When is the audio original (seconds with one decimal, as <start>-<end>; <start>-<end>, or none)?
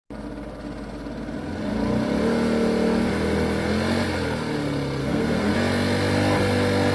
0.0-5.0; 5.5-6.9